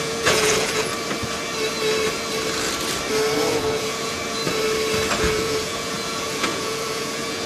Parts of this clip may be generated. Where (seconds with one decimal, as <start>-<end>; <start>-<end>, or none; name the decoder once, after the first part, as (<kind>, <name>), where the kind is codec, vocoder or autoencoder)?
0.0-0.9 (vocoder, Vocos); 3.5-4.4; 5.2-7.5